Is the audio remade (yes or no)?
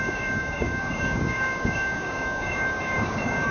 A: yes